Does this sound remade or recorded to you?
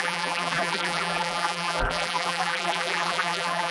remade